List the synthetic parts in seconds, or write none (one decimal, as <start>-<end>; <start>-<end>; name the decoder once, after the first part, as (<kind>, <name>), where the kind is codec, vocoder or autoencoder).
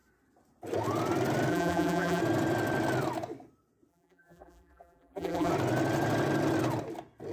1.5-2.2 (vocoder, BigVGAN v2); 3.9-5.5